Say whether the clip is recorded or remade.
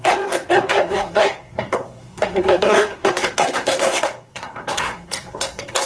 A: remade